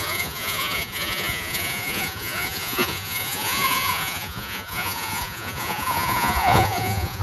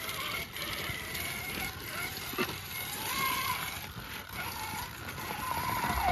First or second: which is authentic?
second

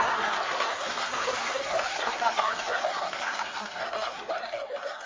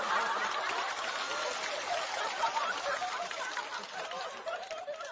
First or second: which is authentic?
second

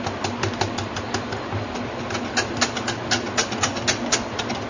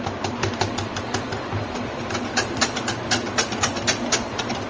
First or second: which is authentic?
first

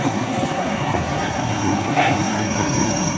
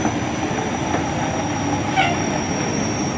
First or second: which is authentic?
second